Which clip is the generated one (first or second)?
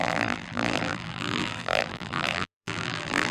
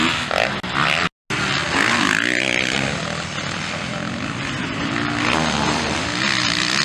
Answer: first